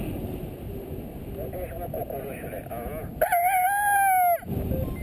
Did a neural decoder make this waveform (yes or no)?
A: no